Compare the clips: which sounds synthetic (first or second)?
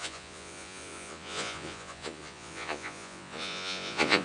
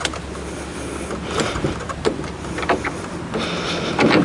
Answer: first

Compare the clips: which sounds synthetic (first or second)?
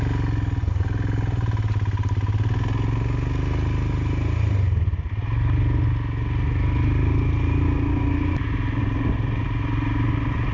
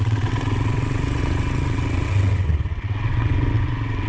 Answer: second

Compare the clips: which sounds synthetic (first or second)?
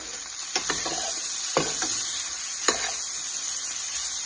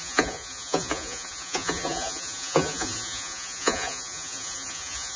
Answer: second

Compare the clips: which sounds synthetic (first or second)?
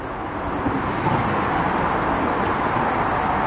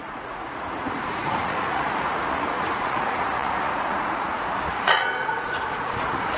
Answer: second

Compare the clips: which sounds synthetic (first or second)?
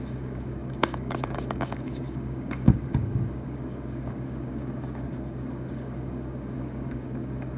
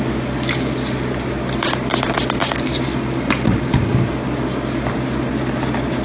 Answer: first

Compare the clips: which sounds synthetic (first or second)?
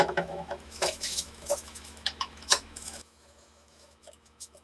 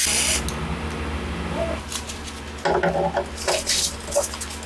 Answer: first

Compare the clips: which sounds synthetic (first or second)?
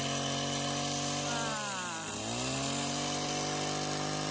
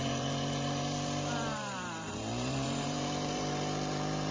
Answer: second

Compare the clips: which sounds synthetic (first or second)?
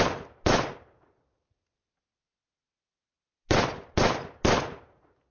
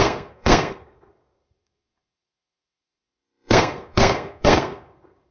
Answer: second